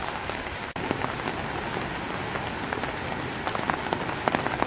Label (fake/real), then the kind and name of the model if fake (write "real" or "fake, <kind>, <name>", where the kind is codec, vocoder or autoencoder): real